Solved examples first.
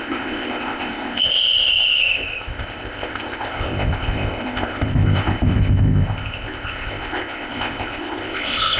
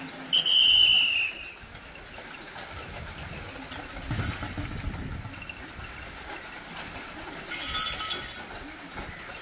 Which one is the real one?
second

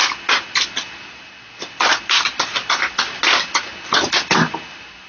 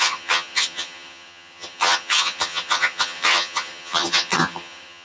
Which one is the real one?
first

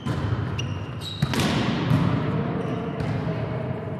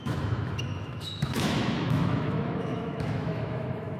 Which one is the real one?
first